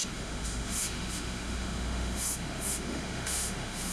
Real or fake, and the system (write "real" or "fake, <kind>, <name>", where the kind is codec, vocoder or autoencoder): fake, autoencoder, DAC-VAE